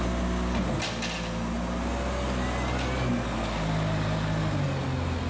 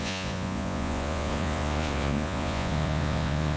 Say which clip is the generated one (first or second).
second